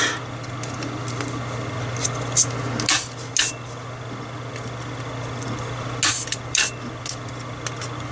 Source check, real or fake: real